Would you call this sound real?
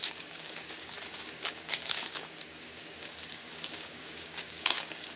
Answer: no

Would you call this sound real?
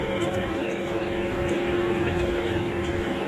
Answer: no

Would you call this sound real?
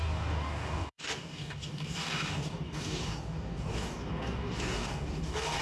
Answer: no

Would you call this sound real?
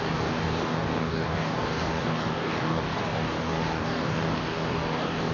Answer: no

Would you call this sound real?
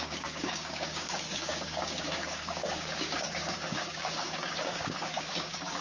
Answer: no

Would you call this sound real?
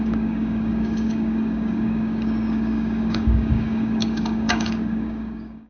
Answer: no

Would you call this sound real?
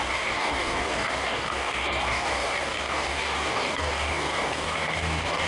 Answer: no